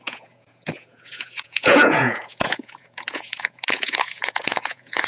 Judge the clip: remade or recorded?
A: remade